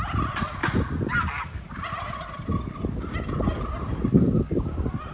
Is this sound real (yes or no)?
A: yes